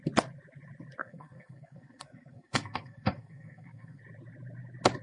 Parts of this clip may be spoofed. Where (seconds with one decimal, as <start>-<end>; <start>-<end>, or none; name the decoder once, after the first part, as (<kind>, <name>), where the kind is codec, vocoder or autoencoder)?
1.0-4.0 (codec, SNAC)